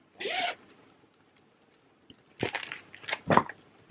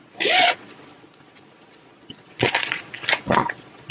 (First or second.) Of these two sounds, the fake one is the second